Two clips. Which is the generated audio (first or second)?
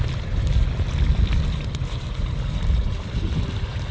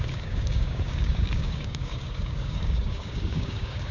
second